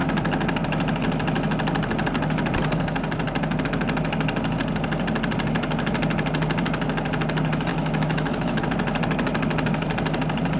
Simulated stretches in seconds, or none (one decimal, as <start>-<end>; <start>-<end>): 7.7-8.6